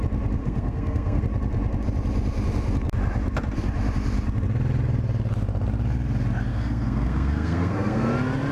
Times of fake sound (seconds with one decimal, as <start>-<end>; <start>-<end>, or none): 0.4-1.2; 6.5-8.1